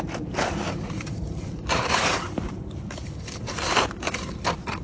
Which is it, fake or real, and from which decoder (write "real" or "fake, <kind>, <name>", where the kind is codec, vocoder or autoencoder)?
fake, vocoder, BigVGAN v2